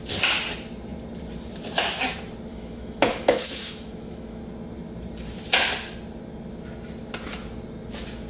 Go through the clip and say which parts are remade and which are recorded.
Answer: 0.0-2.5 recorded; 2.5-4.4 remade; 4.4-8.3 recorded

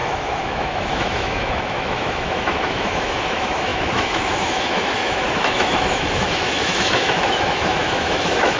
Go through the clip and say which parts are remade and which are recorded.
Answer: 0.0-8.6 remade

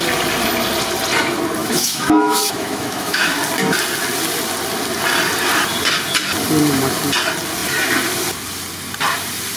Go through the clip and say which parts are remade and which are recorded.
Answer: 0.0-1.6 recorded; 1.6-3.4 remade; 3.4-9.6 recorded

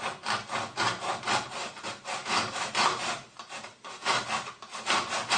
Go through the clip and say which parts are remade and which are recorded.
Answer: 0.0-2.2 recorded; 2.2-2.7 remade; 2.7-5.4 recorded

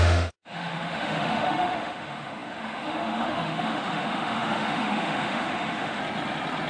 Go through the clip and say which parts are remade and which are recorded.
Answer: 0.0-6.0 remade; 6.0-6.7 recorded

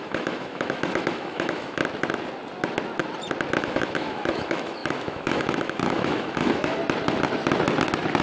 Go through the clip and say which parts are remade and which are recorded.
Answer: 0.0-1.8 remade; 1.8-3.6 recorded; 3.6-6.8 remade; 6.8-8.2 recorded

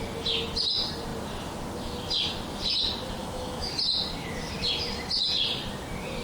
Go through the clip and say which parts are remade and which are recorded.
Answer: 0.0-3.2 recorded; 3.2-3.7 remade; 3.7-6.2 recorded